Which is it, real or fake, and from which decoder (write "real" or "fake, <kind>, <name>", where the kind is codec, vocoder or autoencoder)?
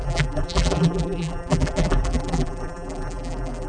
fake, vocoder, BigVGAN v2